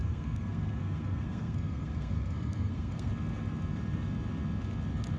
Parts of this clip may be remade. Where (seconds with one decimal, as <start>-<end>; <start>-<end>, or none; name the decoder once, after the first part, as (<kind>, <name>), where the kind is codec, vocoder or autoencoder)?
0.0-3.1 (codec, SNAC)